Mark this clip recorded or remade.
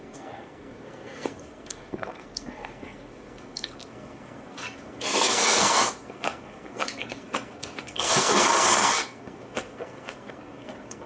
remade